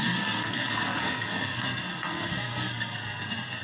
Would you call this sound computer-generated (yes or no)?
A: yes